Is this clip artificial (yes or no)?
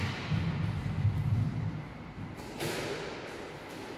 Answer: no